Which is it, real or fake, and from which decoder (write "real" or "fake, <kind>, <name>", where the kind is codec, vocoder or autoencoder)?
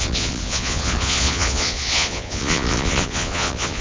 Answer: fake, vocoder, Vocos